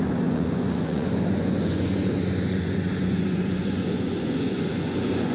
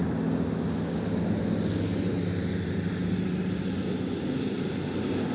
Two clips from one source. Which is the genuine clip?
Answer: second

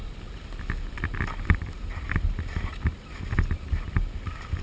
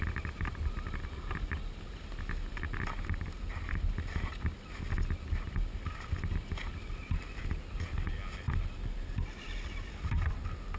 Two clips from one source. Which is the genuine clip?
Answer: second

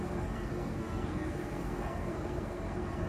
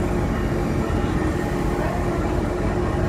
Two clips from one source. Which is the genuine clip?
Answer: second